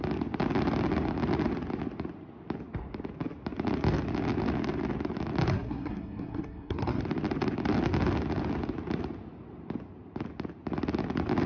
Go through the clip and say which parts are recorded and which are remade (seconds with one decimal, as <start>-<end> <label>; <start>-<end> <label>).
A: 0.0-5.5 recorded; 5.5-7.0 remade; 7.0-11.5 recorded